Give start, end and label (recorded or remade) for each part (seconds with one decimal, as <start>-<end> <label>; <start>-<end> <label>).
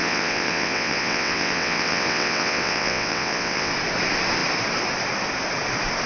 0.0-3.7 remade; 3.7-6.1 recorded